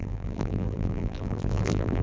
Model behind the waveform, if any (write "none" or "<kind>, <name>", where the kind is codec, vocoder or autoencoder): vocoder, BigVGAN v2